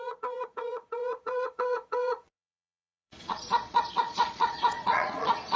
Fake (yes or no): yes